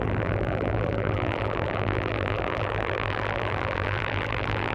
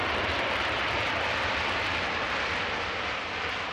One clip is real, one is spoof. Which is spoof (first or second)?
first